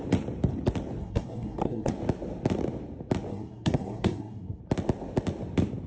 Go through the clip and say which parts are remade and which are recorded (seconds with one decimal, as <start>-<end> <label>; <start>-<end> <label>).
0.0-1.0 recorded; 1.0-1.9 remade; 1.9-3.3 recorded; 3.3-4.6 remade; 4.6-5.9 recorded

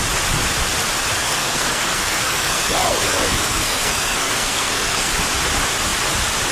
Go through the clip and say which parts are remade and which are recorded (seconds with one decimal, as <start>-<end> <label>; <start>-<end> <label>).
0.0-1.2 recorded; 1.2-5.1 remade; 5.1-6.5 recorded